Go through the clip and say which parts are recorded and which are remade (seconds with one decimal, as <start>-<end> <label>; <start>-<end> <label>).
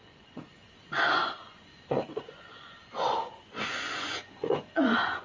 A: 0.0-5.2 remade